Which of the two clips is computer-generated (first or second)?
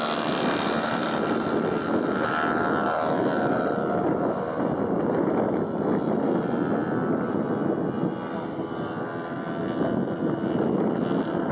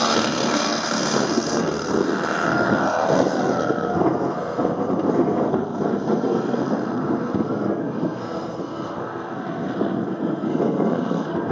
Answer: second